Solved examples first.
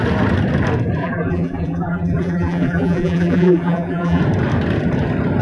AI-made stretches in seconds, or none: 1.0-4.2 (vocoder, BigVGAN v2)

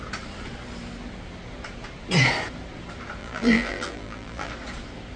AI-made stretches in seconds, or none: 3.2-4.5 (vocoder, BigVGAN v2)

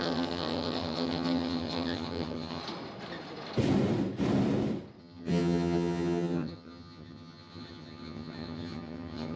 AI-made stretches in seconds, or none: 0.0-2.6 (vocoder, HiFi-GAN); 5.0-9.4